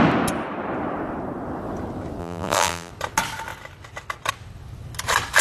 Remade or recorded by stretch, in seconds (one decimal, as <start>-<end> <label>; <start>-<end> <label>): 0.0-2.2 recorded; 2.2-2.9 remade; 2.9-5.4 recorded